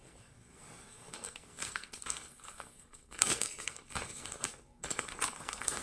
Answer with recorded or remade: remade